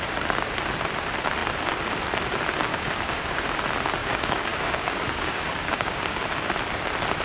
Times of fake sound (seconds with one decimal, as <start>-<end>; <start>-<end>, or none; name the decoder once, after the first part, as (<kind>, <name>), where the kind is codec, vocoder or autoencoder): 2.7-3.4 (codec, DAC); 4.0-6.2